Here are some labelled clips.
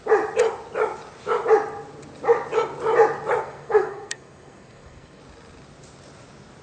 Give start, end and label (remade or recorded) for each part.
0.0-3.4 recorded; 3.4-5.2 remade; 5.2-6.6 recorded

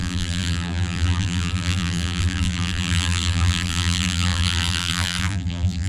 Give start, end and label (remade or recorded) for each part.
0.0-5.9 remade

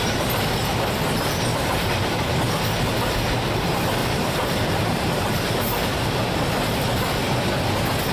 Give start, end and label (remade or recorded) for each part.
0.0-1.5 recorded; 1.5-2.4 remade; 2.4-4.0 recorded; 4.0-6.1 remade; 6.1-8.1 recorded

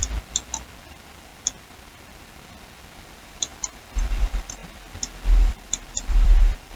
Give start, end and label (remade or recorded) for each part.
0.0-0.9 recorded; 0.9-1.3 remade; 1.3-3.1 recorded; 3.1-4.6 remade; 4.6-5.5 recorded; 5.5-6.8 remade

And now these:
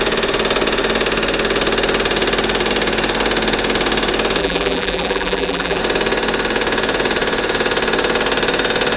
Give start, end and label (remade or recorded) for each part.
0.0-4.4 recorded; 4.4-5.8 remade; 5.8-9.0 recorded

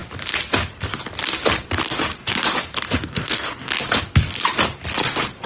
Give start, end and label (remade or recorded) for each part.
0.0-3.0 recorded; 3.0-3.7 remade; 3.7-5.5 recorded

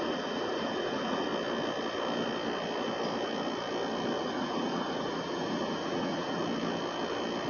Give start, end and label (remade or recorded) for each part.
0.0-1.3 remade; 1.3-4.2 recorded; 4.2-6.4 remade; 6.4-7.5 recorded

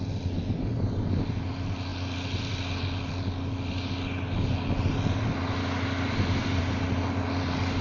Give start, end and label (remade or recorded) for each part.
0.0-7.8 recorded